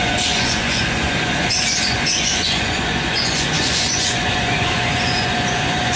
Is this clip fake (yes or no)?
yes